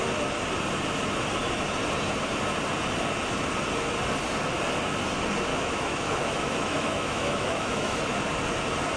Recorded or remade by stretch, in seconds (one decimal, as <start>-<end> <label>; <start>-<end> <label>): 0.0-5.5 recorded; 5.5-8.0 remade; 8.0-9.0 recorded